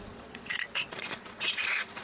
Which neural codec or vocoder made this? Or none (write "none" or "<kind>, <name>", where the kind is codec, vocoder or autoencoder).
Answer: vocoder, Vocos